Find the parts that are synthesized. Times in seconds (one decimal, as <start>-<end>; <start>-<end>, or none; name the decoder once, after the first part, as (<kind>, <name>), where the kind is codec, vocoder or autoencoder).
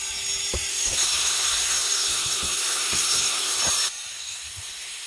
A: 0.7-3.6 (codec, SNAC); 4.1-5.1